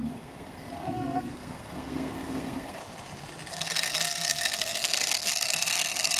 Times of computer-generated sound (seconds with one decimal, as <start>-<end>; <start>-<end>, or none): 0.0-2.8; 3.5-6.2